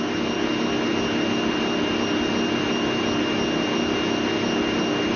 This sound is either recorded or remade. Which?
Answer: recorded